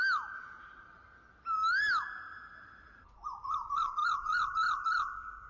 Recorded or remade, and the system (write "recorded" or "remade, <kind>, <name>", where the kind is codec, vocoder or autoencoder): recorded